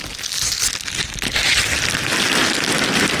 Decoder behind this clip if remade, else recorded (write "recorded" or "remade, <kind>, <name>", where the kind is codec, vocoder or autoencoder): recorded